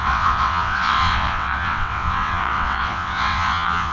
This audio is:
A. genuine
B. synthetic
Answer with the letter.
B